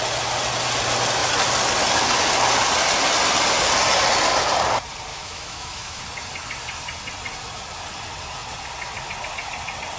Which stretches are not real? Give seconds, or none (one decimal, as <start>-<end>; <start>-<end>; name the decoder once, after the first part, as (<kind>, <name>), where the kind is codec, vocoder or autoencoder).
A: 5.1-6.0 (autoencoder, DAC-VAE)